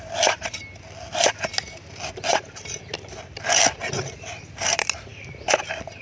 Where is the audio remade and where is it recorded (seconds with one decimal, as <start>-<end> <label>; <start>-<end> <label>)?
0.0-6.0 recorded